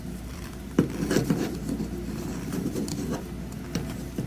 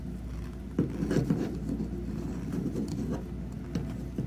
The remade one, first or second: first